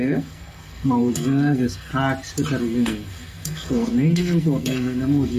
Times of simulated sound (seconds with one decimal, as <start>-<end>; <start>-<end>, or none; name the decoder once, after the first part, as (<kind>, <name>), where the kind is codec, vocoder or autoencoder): 0.0-1.9 (codec, SNAC); 2.6-5.4